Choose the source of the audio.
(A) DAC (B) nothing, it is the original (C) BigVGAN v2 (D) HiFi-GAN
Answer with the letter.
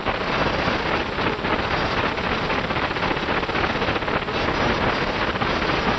B